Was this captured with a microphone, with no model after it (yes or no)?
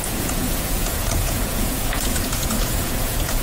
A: no